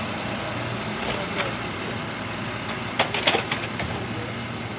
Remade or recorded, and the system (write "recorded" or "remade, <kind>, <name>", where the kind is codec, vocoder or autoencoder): recorded